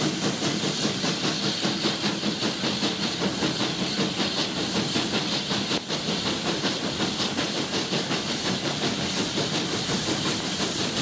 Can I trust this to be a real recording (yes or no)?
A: no